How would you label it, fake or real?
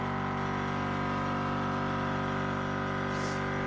real